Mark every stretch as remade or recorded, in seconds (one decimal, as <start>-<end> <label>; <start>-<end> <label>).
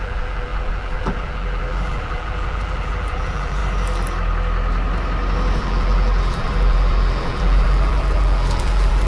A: 0.0-3.6 remade; 3.6-5.6 recorded; 5.6-9.1 remade